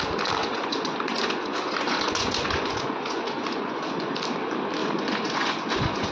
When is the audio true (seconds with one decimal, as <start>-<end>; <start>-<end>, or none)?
0.0-0.4; 4.1-4.8